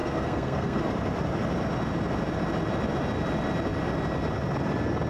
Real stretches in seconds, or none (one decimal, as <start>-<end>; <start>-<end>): 0.8-5.1